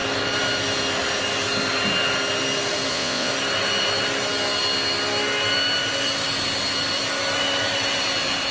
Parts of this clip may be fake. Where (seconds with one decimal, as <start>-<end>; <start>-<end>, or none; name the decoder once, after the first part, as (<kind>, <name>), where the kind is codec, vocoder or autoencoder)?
2.9-3.3 (vocoder, Vocos)